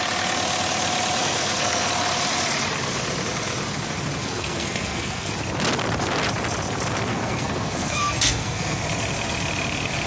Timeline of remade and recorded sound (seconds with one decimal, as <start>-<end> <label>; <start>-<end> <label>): 0.0-1.2 recorded; 1.2-1.9 remade; 1.9-4.2 recorded; 4.2-5.3 remade; 5.3-7.1 recorded; 7.1-8.8 remade; 8.8-10.1 recorded